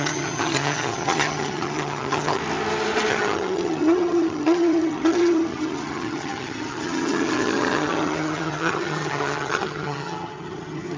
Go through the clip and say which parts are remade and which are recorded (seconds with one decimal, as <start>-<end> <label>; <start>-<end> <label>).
0.0-2.4 remade; 2.4-3.1 recorded; 3.1-11.0 remade

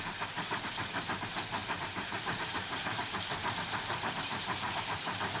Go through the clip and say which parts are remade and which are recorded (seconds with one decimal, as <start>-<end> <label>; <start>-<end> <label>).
0.0-1.6 recorded; 1.6-4.8 remade; 4.8-5.4 recorded

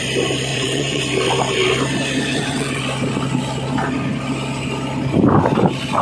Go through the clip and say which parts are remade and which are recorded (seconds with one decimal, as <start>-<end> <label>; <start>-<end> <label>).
0.0-0.5 recorded; 0.5-1.0 remade; 1.0-2.3 recorded; 2.3-2.8 remade; 2.8-6.0 recorded

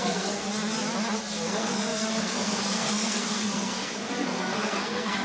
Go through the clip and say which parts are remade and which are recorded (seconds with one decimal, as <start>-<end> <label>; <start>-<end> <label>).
0.0-0.5 remade; 0.5-1.2 recorded; 1.2-5.2 remade

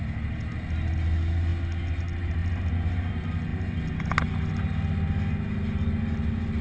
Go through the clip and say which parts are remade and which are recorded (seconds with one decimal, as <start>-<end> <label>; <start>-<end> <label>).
0.0-6.6 recorded

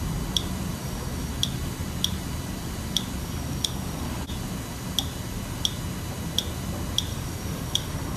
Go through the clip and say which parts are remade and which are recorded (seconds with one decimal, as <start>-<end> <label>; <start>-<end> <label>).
0.0-0.8 recorded; 0.8-1.3 remade; 1.3-3.2 recorded; 3.2-4.1 remade; 4.1-7.1 recorded; 7.1-8.2 remade

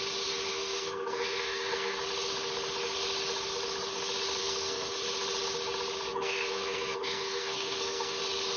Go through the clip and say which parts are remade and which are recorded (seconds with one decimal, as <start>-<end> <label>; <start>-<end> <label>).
0.0-0.5 recorded; 0.5-2.0 remade; 2.0-4.4 recorded; 4.4-4.9 remade; 4.9-6.1 recorded; 6.1-8.2 remade; 8.2-8.6 recorded